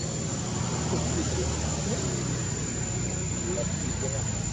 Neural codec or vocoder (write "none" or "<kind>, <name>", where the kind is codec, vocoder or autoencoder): none